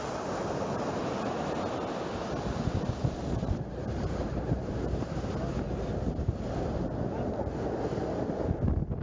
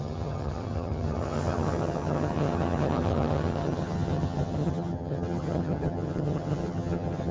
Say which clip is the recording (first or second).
first